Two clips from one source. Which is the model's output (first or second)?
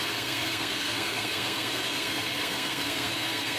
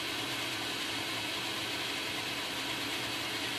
first